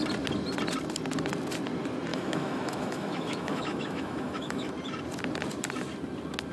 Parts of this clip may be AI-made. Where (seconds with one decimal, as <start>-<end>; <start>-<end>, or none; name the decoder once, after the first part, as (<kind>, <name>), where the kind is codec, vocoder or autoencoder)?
2.1-4.7 (autoencoder, DAC-VAE)